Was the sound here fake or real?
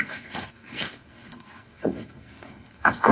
fake